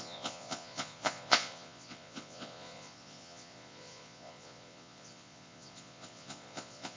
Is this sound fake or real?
fake